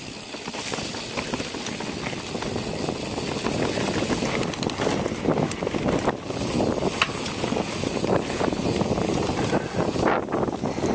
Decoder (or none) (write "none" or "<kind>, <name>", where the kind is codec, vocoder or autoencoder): none